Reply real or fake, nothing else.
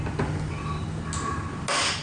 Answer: real